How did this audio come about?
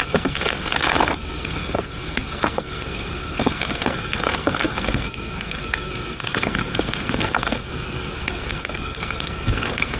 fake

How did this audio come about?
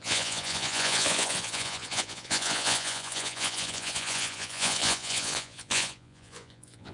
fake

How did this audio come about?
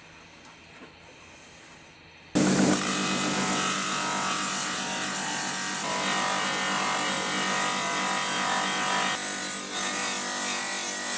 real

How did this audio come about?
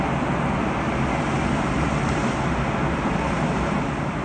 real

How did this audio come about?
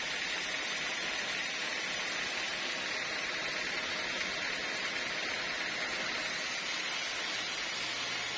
real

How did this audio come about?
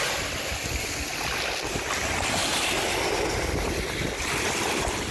real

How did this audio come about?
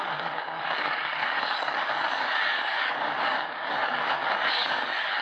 fake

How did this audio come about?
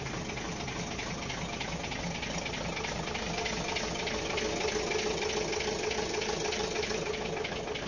real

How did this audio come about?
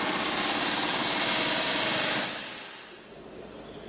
fake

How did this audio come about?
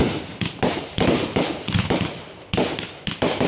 real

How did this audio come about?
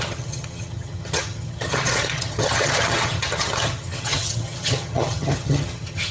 fake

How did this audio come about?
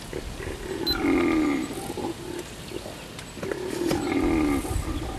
real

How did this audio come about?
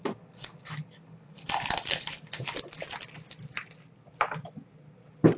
real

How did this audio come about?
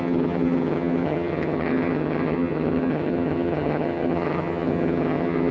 fake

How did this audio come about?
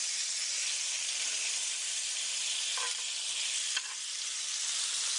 real